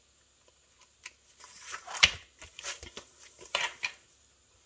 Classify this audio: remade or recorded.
recorded